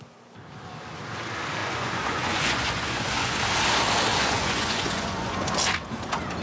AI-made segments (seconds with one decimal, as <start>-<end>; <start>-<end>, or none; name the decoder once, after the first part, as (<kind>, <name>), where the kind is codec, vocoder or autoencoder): 1.6-3.4 (vocoder, Vocos); 4.1-5.5